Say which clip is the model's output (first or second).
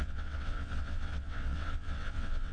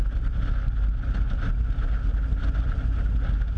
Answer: first